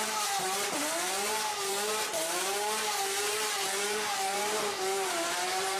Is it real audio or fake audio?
fake